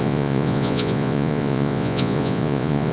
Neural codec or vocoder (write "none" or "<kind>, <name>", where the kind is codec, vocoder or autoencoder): vocoder, Vocos